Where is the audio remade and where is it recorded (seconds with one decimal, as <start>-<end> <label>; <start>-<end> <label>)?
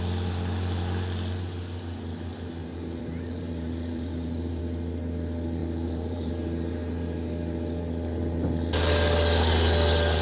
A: 0.0-2.6 recorded; 2.6-4.6 remade; 4.6-5.6 recorded; 5.6-6.3 remade; 6.3-10.2 recorded